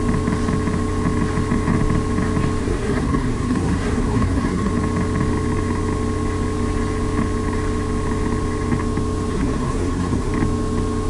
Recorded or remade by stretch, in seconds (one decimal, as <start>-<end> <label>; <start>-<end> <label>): 0.0-2.6 recorded; 2.6-4.7 remade; 4.7-9.3 recorded; 9.3-10.3 remade; 10.3-11.1 recorded